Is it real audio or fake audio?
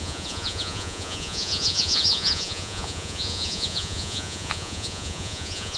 fake